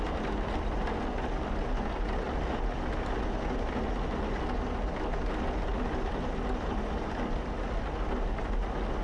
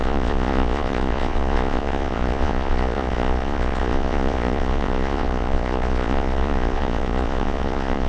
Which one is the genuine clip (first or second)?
first